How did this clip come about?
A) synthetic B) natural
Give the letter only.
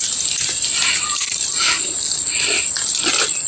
B